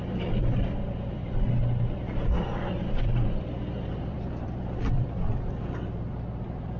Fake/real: fake